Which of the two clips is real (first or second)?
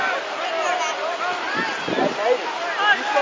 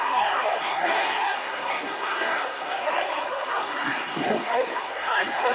first